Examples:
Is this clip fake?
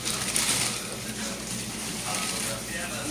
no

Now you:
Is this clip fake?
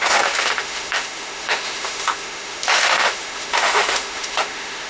yes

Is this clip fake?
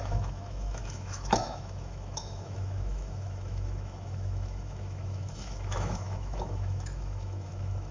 yes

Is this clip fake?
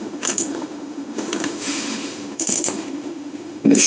yes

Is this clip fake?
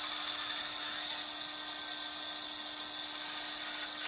no